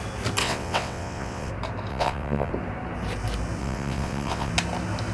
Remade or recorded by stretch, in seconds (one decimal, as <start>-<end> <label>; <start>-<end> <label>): 0.0-0.4 recorded; 0.4-1.5 remade; 1.5-1.9 recorded; 1.9-2.5 remade; 2.5-3.6 recorded; 3.6-4.5 remade; 4.5-5.1 recorded